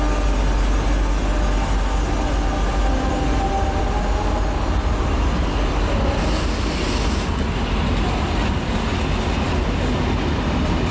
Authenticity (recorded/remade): recorded